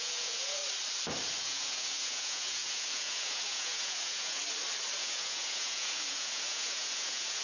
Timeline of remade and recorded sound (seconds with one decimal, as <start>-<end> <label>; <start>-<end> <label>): 0.0-0.6 remade; 0.6-1.4 recorded; 1.4-4.4 remade; 4.4-5.0 recorded; 5.0-7.4 remade